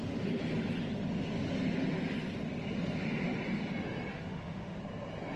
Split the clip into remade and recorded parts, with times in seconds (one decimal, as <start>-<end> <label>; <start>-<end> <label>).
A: 0.0-4.1 recorded; 4.1-4.8 remade; 4.8-5.4 recorded

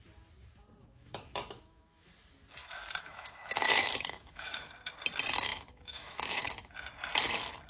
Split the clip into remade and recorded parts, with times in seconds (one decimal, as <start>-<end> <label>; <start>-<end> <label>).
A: 0.0-0.8 recorded; 0.8-2.1 remade; 2.1-2.6 recorded; 2.6-4.7 remade; 4.7-5.5 recorded; 5.5-6.5 remade; 6.5-7.7 recorded

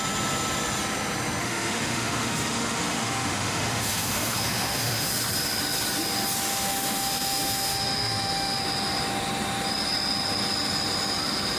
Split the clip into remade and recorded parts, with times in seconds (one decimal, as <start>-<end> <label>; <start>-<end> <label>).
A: 0.0-1.4 recorded; 1.4-5.1 remade; 5.1-6.5 recorded; 6.5-8.6 remade; 8.6-11.6 recorded

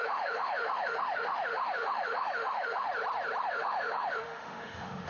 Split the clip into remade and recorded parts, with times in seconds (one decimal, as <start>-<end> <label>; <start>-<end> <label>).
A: 0.0-2.9 remade; 2.9-3.4 recorded; 3.4-5.1 remade

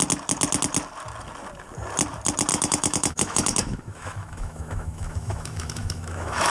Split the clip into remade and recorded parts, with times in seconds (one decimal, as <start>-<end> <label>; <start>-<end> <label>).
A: 0.0-2.5 recorded; 2.5-6.5 remade

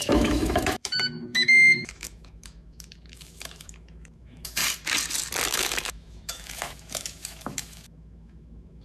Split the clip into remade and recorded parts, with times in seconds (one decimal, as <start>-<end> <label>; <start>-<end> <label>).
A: 0.0-4.6 remade; 4.6-5.5 recorded; 5.5-8.8 remade